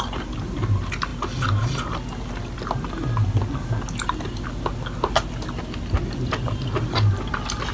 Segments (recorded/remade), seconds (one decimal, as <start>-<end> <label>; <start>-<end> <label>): 0.0-7.7 recorded